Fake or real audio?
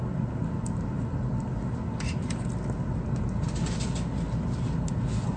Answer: real